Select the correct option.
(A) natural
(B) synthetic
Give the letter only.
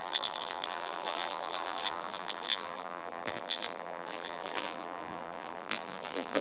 B